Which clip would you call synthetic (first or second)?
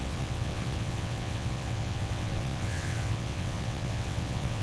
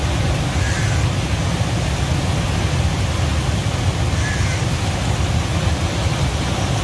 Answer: first